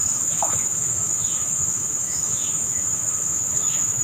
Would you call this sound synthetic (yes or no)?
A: yes